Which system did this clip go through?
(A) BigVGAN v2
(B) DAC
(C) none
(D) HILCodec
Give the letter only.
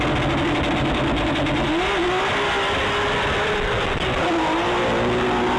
C